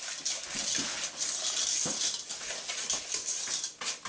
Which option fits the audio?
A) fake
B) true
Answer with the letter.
B